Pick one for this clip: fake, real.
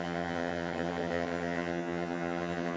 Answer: fake